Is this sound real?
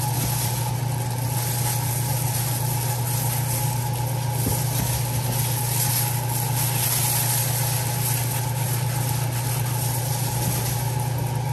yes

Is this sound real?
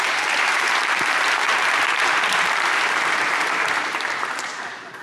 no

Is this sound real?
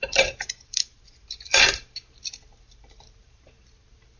no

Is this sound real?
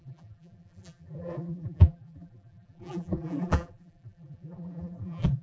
no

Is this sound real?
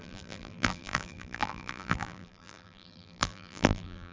no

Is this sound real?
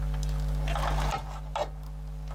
yes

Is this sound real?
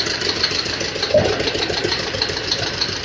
no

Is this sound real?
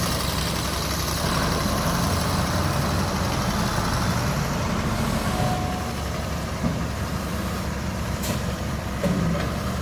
yes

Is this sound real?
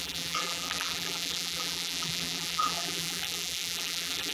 no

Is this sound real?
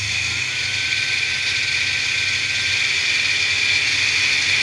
yes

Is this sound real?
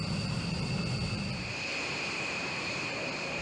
no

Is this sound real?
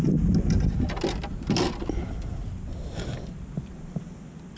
yes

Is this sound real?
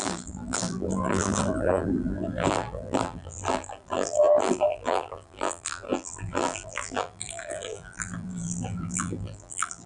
no